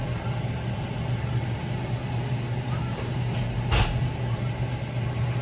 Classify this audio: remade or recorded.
recorded